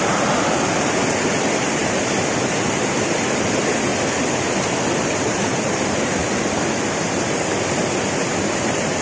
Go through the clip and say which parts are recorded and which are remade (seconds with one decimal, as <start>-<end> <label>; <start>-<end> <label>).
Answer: 0.0-1.8 remade; 1.8-2.5 recorded; 2.5-3.9 remade; 3.9-4.4 recorded; 4.4-6.2 remade; 6.2-8.4 recorded; 8.4-9.0 remade

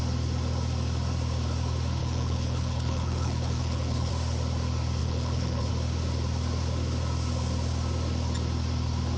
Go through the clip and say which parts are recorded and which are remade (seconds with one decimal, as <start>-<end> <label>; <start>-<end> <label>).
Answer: 0.0-2.0 recorded; 2.0-4.1 remade; 4.1-5.0 recorded; 5.0-5.7 remade; 5.7-9.2 recorded

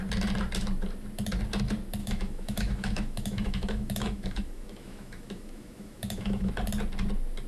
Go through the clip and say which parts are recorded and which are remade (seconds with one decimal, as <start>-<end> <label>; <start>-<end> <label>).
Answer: 0.0-2.0 recorded; 2.0-6.5 remade; 6.5-7.5 recorded

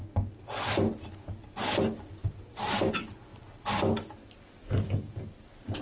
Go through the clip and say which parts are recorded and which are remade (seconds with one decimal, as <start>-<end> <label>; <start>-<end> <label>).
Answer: 0.0-5.8 recorded

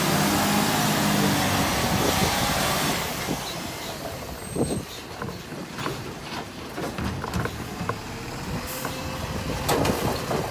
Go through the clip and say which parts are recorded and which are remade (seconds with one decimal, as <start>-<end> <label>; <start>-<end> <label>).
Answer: 0.0-2.2 recorded; 2.2-4.9 remade; 4.9-5.5 recorded; 5.5-6.3 remade; 6.3-10.5 recorded

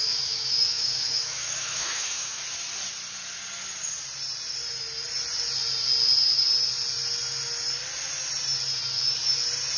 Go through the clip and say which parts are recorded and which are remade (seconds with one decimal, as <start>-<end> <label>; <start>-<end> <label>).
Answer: 0.0-2.4 remade; 2.4-9.8 recorded

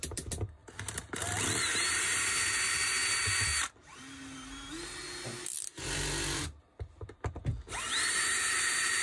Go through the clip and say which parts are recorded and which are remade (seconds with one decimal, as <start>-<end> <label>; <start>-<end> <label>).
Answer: 0.0-9.0 recorded